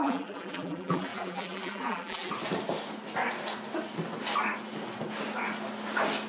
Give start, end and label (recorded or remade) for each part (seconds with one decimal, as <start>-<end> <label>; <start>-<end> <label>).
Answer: 0.0-2.3 remade; 2.3-6.3 recorded